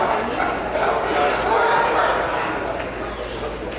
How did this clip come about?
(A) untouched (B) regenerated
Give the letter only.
A